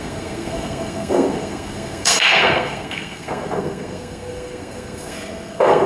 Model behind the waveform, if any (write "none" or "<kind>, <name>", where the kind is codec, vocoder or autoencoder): codec, SNAC